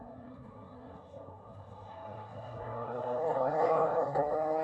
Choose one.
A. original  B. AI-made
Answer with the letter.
B